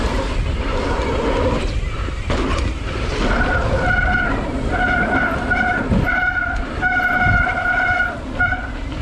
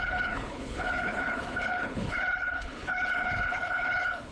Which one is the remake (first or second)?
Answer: second